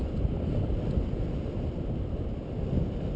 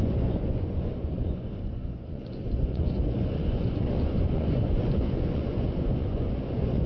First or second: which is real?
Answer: first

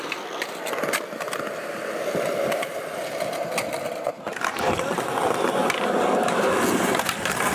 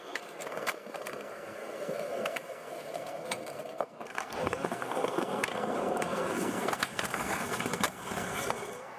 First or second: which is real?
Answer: first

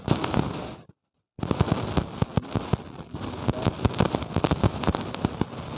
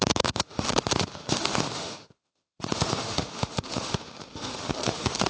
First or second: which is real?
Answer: first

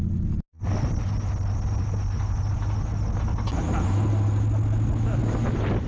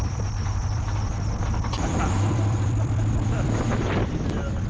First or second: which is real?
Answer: first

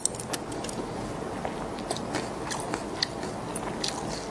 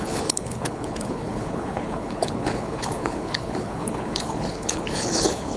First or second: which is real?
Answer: first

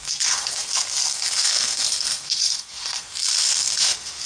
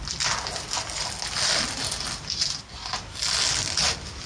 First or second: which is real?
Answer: second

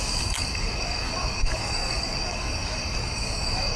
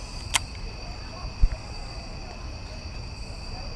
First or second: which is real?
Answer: second